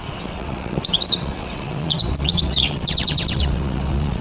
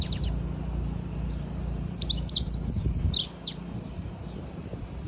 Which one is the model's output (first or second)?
first